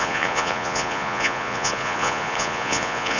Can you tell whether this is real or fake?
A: fake